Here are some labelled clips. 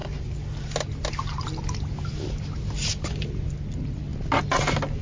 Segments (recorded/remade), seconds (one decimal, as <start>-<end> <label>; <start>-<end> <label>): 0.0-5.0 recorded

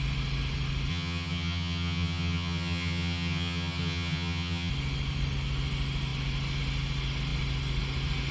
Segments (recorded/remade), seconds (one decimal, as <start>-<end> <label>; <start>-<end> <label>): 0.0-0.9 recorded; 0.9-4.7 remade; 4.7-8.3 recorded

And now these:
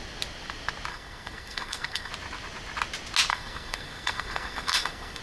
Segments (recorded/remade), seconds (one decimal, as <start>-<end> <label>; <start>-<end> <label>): 0.0-0.9 recorded; 0.9-2.1 remade; 2.1-3.3 recorded; 3.3-5.2 remade